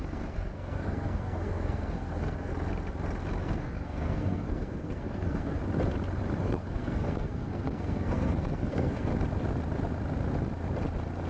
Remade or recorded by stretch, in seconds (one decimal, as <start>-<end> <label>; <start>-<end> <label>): 0.0-2.5 remade; 2.5-3.4 recorded; 3.4-5.6 remade; 5.6-6.4 recorded; 6.4-9.1 remade; 9.1-11.3 recorded